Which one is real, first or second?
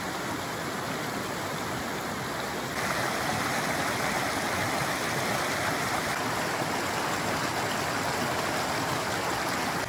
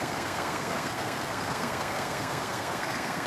first